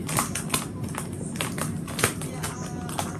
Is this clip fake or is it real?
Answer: real